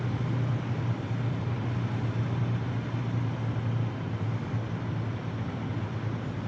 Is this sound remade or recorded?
recorded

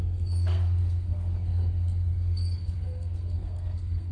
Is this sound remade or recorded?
remade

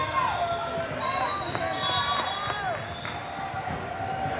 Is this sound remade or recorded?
recorded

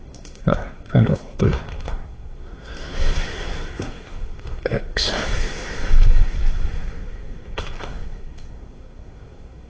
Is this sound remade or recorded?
remade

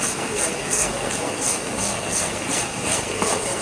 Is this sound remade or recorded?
remade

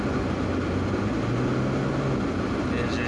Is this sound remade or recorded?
recorded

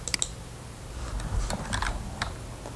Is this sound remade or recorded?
recorded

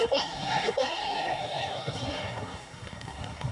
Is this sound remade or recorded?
remade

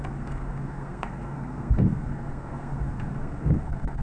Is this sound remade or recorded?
remade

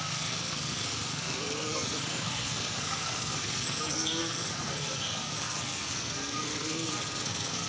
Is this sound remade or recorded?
remade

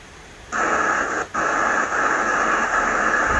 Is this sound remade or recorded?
recorded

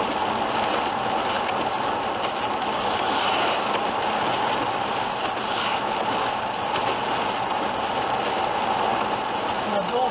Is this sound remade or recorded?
recorded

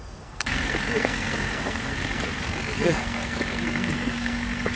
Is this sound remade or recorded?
remade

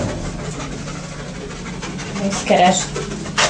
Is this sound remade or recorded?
recorded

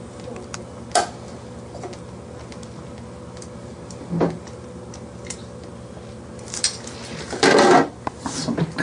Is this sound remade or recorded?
recorded